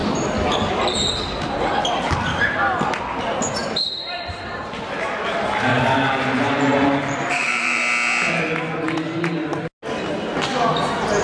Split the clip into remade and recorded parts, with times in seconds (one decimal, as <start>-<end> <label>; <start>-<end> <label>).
0.0-3.6 recorded; 3.6-4.8 remade; 4.8-5.7 recorded; 5.7-7.8 remade; 7.8-11.2 recorded